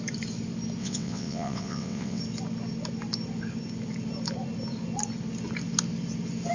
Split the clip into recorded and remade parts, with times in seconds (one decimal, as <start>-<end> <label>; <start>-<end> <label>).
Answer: 0.0-0.8 recorded; 0.8-2.2 remade; 2.2-6.5 recorded